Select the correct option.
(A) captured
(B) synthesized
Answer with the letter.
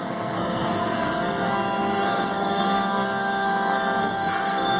B